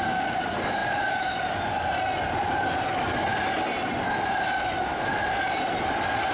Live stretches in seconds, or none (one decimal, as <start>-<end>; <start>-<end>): 0.0-0.8; 1.7-6.3